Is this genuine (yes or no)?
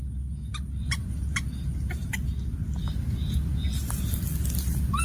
yes